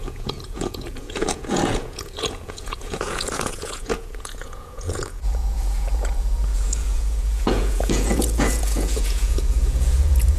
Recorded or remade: remade